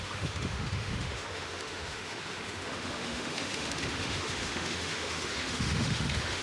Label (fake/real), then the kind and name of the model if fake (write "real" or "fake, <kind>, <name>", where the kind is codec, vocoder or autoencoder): fake, autoencoder, DAC-VAE